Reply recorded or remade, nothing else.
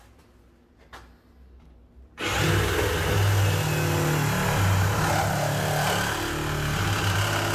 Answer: recorded